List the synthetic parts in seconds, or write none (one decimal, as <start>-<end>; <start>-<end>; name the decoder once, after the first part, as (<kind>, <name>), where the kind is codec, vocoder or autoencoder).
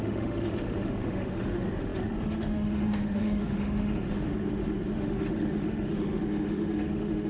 0.0-4.3 (autoencoder, DAC-VAE); 4.9-7.3